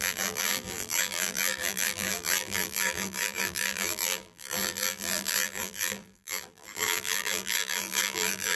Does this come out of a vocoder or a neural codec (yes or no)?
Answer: yes